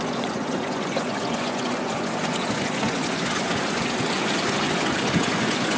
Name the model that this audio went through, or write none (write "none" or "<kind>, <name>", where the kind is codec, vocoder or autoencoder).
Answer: vocoder, Vocos